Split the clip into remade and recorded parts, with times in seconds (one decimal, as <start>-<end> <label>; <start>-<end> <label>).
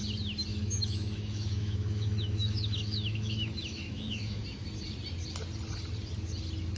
0.0-0.5 recorded; 0.5-4.4 remade; 4.4-6.8 recorded